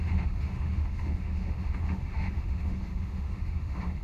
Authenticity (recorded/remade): remade